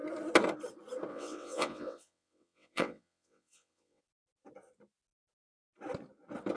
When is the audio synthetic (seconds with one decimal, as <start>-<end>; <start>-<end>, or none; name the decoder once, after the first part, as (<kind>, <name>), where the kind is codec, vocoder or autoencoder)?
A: 1.1-4.0 (vocoder, WaveNeXt)